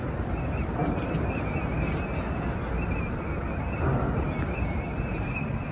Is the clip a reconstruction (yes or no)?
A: no